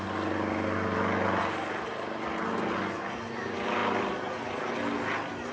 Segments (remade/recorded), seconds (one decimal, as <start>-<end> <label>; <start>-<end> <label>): 0.0-5.5 recorded